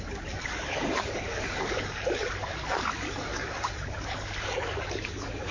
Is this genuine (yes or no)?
no